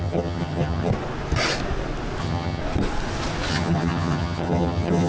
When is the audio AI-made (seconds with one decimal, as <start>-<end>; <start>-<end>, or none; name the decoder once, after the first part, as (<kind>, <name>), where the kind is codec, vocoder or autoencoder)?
0.0-0.9 (vocoder, HiFi-GAN); 2.2-2.6; 3.5-5.1